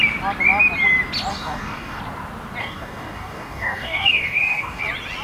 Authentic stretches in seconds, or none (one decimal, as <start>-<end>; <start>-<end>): 0.0-1.3; 2.0-2.6; 4.8-5.2